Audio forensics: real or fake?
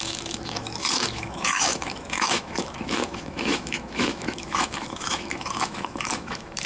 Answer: fake